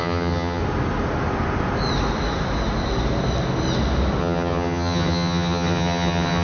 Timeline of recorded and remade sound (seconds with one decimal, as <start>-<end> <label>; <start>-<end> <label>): 0.0-0.6 remade; 0.6-4.2 recorded; 4.2-6.4 remade